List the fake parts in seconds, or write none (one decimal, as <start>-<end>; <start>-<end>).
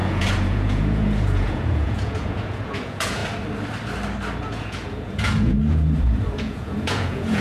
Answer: 0.0-3.2; 4.4-7.4